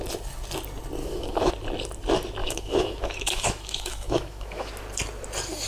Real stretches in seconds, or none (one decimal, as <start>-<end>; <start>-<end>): 0.0-1.0; 1.5-2.4; 4.7-5.7